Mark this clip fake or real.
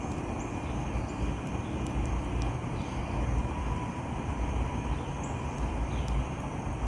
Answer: real